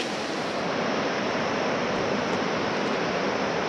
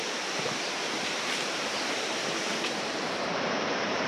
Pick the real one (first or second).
first